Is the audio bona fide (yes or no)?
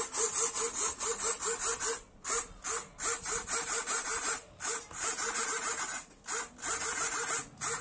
yes